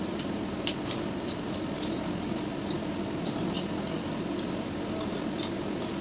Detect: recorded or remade recorded